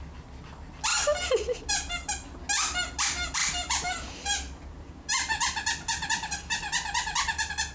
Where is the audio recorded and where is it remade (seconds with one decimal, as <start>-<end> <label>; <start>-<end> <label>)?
0.0-0.9 recorded; 0.9-1.7 remade; 1.7-3.4 recorded; 3.4-5.1 remade; 5.1-7.7 recorded

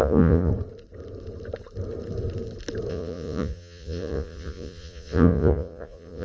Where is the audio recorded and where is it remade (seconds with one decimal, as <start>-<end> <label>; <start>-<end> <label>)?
0.0-0.5 remade; 0.5-2.9 recorded; 2.9-6.2 remade

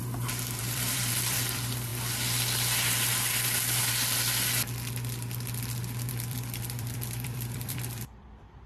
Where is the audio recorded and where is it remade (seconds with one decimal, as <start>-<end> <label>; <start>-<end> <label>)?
0.0-0.6 recorded; 0.6-1.9 remade; 1.9-6.1 recorded; 6.1-8.7 remade

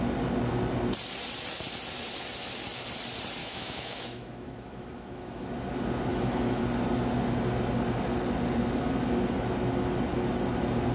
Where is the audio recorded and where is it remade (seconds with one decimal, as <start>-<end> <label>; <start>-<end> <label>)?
0.0-3.4 recorded; 3.4-5.5 remade; 5.5-6.1 recorded; 6.1-6.6 remade; 6.6-10.9 recorded